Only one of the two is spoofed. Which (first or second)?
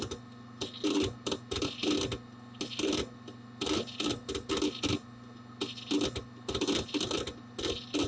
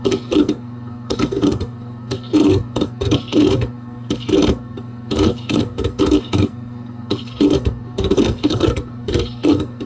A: second